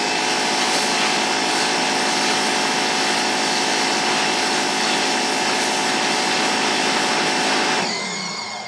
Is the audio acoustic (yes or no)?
yes